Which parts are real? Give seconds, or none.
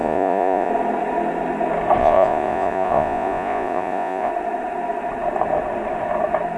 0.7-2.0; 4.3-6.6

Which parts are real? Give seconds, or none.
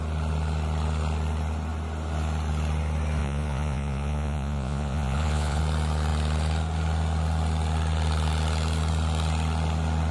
0.0-3.2; 5.6-10.1